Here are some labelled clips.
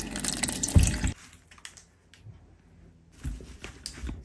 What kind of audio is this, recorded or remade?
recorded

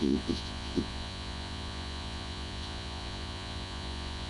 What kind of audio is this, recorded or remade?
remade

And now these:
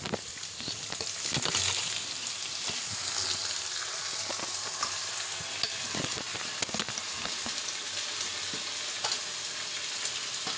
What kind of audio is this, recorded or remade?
recorded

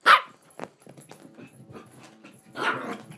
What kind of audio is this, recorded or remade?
recorded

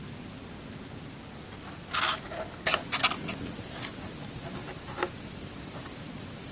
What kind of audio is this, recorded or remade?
recorded